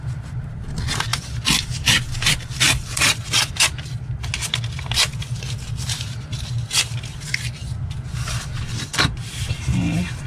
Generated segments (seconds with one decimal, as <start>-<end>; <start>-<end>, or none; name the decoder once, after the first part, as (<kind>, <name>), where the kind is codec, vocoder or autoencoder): none